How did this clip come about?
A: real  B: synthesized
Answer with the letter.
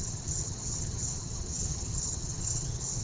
B